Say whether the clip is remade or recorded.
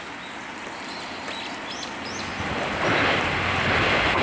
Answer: recorded